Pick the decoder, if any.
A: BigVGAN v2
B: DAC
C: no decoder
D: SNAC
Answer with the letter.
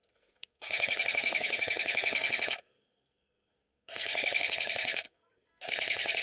D